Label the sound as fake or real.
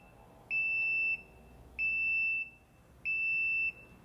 real